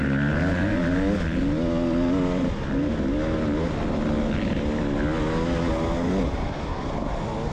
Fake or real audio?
real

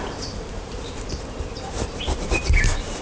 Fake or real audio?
fake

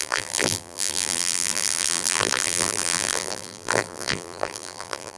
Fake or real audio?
fake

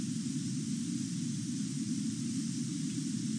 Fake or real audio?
fake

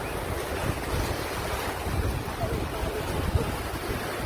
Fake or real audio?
real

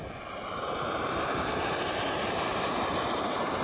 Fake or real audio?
fake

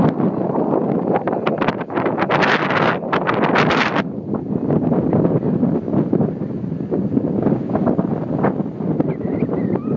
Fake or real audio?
real